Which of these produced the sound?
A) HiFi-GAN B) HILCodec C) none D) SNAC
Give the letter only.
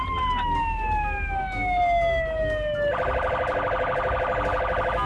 C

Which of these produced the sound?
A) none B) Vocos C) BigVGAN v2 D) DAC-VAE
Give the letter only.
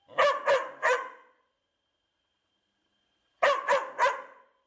A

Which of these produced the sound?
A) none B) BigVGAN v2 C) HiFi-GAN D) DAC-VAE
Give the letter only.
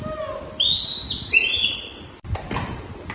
A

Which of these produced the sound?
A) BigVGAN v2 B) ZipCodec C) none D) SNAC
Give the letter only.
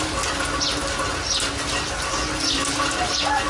C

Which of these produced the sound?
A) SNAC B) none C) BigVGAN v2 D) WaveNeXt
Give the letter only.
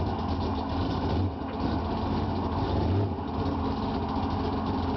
B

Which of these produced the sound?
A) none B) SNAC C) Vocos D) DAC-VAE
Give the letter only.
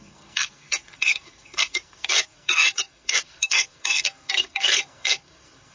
B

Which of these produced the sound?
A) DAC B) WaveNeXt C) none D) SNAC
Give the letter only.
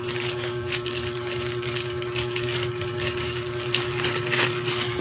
A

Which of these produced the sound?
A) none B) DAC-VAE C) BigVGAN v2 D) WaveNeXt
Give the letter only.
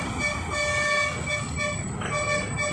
A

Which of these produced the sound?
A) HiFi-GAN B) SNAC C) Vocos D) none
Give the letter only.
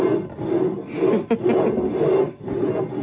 D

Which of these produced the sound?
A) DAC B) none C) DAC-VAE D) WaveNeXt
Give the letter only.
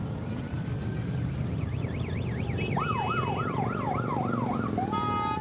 B